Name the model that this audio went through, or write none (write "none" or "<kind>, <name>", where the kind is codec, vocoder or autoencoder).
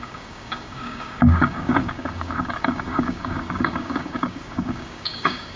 codec, DAC